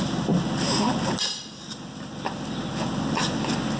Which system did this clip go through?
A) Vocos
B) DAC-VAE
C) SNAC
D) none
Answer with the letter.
D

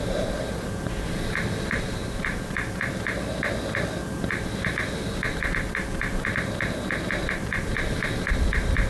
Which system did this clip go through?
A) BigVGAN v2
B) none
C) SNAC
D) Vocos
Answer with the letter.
B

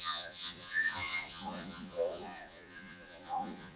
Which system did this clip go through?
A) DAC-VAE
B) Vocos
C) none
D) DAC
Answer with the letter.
B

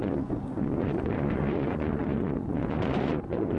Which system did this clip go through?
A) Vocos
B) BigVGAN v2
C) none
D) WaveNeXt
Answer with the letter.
A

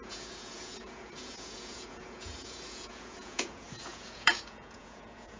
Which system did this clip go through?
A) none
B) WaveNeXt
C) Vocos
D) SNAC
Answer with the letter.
C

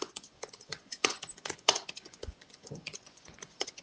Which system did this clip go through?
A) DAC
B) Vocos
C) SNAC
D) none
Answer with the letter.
B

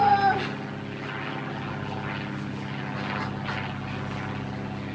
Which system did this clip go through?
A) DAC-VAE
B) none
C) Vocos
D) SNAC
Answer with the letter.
B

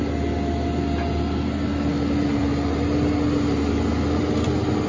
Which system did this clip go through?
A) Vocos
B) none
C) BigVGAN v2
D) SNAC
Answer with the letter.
B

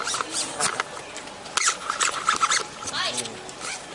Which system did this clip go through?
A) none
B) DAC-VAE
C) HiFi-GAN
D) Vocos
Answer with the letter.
A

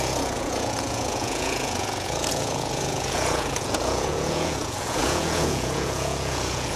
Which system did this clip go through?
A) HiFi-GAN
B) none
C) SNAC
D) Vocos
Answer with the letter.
D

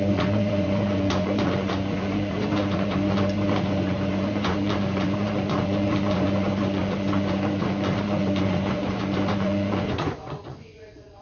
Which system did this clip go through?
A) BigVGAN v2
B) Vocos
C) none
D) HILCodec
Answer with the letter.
B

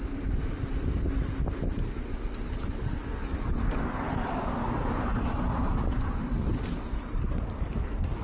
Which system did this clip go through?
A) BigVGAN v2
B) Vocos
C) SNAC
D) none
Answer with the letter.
D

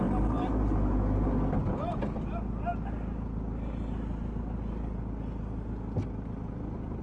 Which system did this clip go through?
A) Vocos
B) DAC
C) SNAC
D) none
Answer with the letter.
D